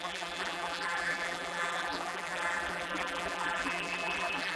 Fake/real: fake